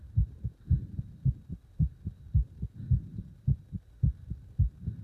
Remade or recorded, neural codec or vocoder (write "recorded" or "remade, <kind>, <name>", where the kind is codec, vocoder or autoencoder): recorded